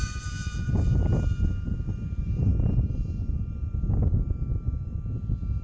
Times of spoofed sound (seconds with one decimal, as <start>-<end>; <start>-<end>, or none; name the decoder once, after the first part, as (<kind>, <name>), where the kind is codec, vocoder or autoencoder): 0.0-2.5 (vocoder, BigVGAN v2); 5.1-5.6